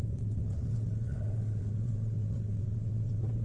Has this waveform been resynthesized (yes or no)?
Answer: yes